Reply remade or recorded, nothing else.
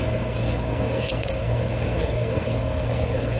remade